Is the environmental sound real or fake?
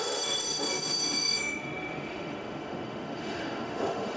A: fake